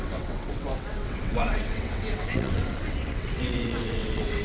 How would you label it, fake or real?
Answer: fake